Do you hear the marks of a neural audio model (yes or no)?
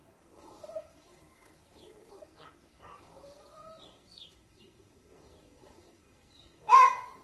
yes